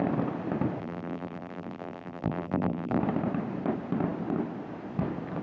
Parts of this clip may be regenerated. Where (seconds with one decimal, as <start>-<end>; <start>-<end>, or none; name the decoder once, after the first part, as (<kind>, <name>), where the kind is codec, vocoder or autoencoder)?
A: 0.8-3.0 (vocoder, BigVGAN v2)